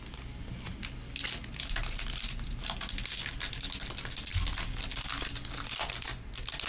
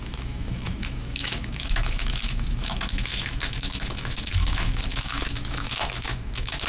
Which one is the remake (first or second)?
second